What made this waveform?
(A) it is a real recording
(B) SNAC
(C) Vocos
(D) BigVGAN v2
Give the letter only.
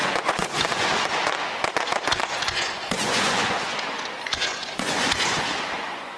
C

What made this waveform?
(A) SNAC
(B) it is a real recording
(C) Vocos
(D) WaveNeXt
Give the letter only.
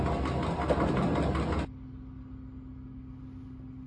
B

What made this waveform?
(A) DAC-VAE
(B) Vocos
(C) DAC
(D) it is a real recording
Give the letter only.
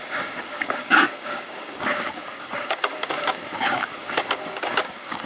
C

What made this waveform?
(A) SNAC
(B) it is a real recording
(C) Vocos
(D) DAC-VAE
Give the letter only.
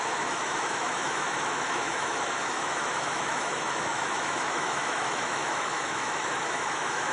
D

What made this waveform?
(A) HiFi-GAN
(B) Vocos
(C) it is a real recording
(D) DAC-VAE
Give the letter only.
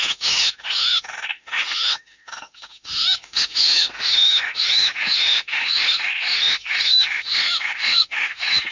D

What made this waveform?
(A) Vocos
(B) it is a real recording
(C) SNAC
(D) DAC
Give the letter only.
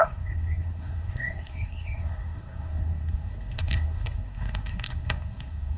C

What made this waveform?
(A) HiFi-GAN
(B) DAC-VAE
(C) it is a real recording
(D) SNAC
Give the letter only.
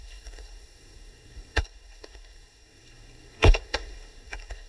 D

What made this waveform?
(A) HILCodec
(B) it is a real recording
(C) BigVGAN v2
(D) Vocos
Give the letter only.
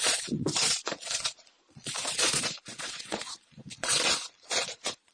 D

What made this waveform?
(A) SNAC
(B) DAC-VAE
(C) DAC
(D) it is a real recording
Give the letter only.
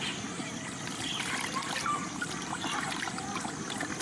D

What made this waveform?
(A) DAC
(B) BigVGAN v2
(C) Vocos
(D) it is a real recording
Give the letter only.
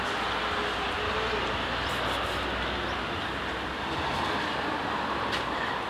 D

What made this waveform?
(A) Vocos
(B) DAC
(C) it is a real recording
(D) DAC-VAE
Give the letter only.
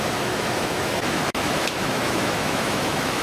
D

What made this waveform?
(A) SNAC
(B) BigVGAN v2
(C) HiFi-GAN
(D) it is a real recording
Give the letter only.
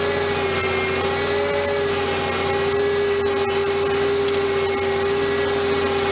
D